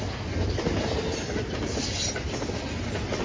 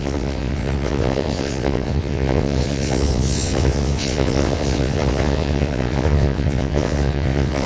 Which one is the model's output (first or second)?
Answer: second